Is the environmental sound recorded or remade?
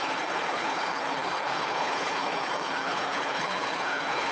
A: remade